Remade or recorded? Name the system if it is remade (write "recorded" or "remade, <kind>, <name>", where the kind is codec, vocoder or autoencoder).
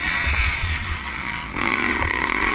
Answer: remade, vocoder, Vocos